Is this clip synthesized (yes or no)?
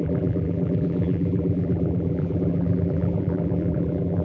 yes